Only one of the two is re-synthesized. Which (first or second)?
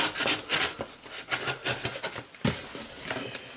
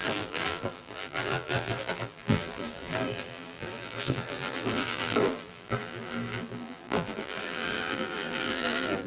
second